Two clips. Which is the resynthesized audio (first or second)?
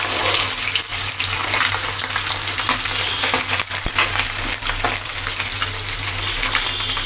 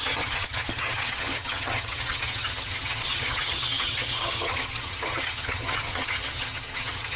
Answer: second